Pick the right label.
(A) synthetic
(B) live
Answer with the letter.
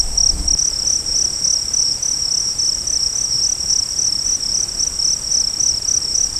B